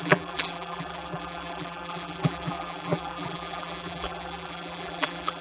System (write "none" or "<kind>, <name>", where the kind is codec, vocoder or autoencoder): vocoder, BigVGAN v2